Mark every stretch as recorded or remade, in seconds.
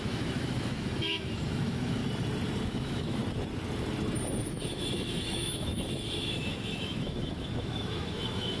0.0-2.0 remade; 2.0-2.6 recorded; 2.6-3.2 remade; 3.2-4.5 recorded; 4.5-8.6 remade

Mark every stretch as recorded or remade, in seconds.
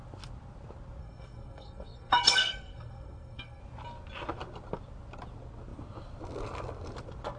0.0-1.0 recorded; 1.0-3.6 remade; 3.6-7.4 recorded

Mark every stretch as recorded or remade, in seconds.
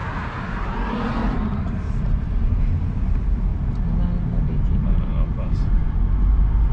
0.0-1.6 recorded; 1.6-3.5 remade; 3.5-4.3 recorded; 4.3-5.8 remade; 5.8-6.3 recorded; 6.3-6.7 remade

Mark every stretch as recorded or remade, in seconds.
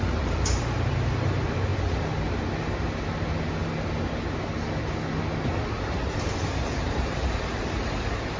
0.0-1.7 remade; 1.7-5.8 recorded; 5.8-8.4 remade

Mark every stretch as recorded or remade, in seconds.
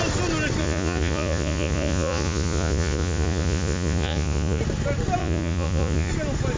0.0-0.6 recorded; 0.6-4.6 remade; 4.6-5.2 recorded; 5.2-6.1 remade; 6.1-6.6 recorded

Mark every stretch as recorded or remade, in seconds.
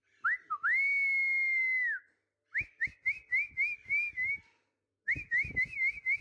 0.0-6.2 recorded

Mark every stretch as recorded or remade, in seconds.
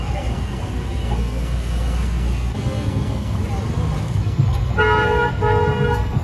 0.0-3.4 remade; 3.4-4.0 recorded; 4.0-6.2 remade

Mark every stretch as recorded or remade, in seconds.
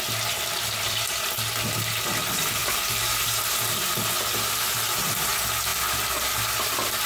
0.0-7.1 recorded